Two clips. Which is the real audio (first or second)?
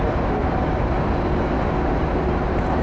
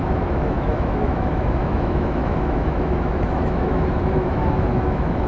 first